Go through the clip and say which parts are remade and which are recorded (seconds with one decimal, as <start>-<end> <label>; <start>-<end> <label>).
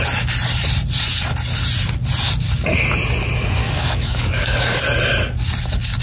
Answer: 0.0-3.6 recorded; 3.6-4.8 remade; 4.8-6.0 recorded